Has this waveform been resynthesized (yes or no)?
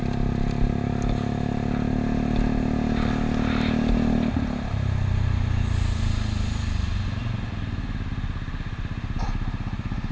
no